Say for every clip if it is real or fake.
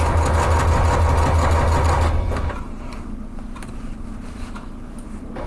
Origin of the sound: real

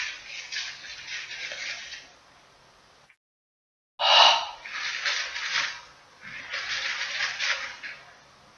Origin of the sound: real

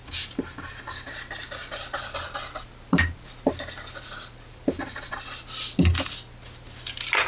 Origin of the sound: real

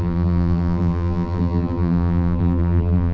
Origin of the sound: fake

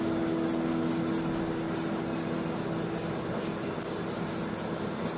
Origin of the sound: real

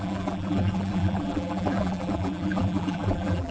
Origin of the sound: fake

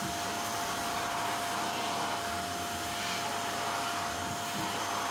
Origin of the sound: real